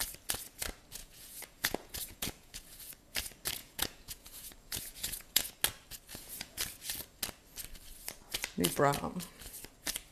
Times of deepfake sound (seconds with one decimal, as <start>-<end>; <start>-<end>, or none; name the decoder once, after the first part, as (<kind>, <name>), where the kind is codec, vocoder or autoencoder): 1.0-2.9 (vocoder, Vocos); 3.6-5.5; 6.1-6.6